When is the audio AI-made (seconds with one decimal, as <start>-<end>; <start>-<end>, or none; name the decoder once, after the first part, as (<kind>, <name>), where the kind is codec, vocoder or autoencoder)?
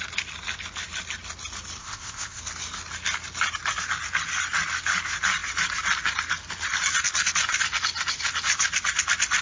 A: 1.8-2.4 (codec, ZipCodec)